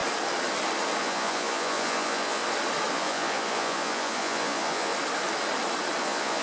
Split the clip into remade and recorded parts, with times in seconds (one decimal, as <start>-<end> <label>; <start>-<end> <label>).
0.0-1.0 recorded; 1.0-2.4 remade; 2.4-2.9 recorded; 2.9-4.9 remade; 4.9-6.0 recorded; 6.0-6.4 remade